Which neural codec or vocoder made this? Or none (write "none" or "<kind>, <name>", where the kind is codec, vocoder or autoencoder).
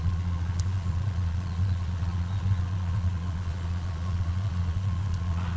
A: vocoder, Vocos